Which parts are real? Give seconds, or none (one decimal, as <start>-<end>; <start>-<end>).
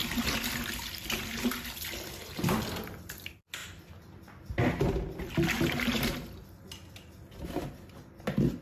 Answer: 0.0-8.6